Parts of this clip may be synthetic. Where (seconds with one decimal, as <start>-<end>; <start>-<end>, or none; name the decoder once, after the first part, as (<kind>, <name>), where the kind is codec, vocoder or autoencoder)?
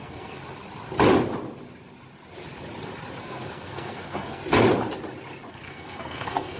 0.0-0.4 (codec, SNAC); 3.2-4.4; 5.5-6.6